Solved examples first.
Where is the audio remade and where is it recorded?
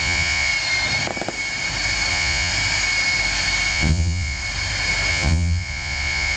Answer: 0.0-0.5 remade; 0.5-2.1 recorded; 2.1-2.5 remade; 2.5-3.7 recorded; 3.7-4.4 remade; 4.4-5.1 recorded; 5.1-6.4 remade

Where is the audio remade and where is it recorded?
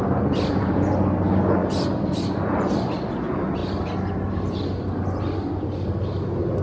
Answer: 0.0-6.6 recorded